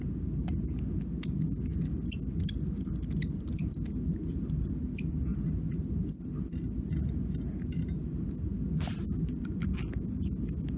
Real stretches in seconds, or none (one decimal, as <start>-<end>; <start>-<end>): 0.0-10.8